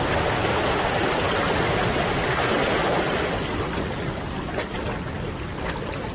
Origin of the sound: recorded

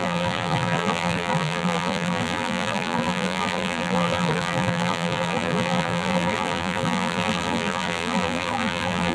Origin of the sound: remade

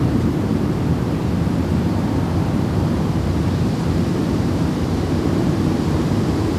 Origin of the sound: remade